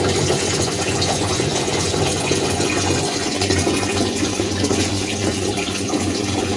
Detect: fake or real fake